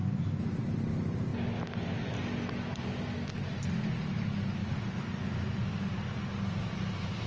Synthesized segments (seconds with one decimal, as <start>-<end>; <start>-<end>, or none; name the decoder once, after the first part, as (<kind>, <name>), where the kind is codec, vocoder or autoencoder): none